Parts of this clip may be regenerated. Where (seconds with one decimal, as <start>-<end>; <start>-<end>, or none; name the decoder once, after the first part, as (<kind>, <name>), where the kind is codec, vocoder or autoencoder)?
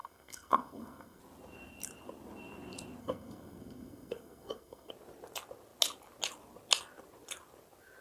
0.0-1.2 (codec, SNAC); 3.0-4.9